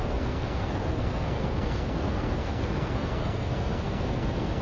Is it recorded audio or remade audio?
remade